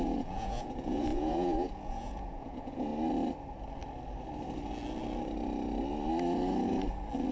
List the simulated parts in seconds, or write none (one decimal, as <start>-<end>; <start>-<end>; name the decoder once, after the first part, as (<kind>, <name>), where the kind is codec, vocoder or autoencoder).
0.0-2.9 (vocoder, Vocos)